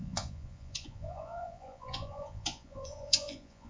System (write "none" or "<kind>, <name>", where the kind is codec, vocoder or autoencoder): vocoder, Vocos